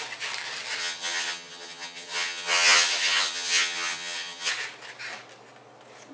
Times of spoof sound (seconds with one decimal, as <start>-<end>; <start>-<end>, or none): 0.8-4.5